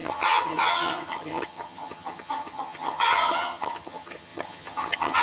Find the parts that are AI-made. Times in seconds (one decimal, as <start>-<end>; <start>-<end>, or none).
0.0-5.2